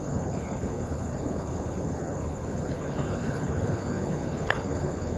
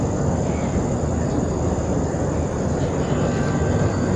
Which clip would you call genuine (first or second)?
second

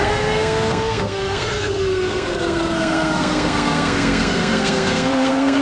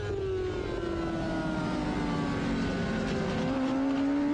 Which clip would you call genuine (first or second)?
second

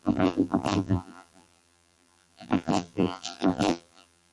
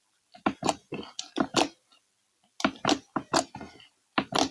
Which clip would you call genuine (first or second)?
second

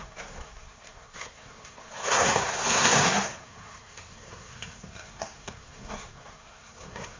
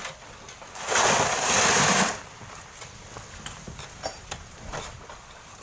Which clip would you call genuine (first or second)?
second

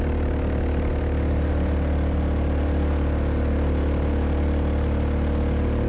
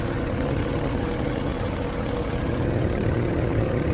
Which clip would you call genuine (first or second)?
first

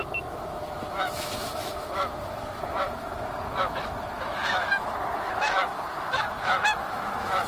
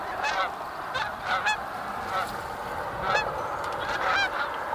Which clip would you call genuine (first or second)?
second